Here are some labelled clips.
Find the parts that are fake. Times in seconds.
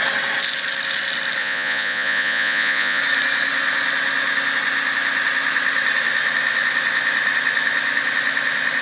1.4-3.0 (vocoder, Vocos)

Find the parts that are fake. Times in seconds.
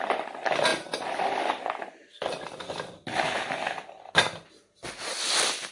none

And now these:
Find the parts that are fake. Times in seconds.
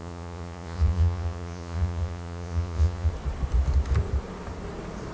0.0-3.1 (vocoder, Vocos)